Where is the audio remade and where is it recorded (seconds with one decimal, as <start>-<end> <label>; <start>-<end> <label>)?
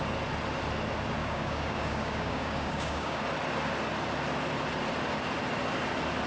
0.0-1.2 recorded; 1.2-3.2 remade; 3.2-6.3 recorded